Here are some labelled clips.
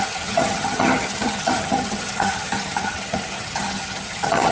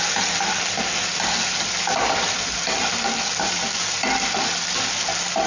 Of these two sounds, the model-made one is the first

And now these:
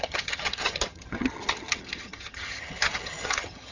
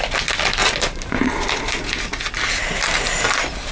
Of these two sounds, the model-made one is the first